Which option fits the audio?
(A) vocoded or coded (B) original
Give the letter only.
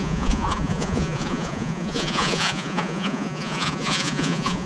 A